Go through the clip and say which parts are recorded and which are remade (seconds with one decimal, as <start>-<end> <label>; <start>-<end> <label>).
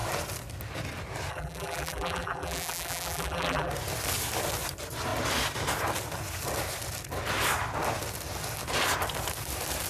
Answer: 0.0-1.3 recorded; 1.3-3.7 remade; 3.7-9.9 recorded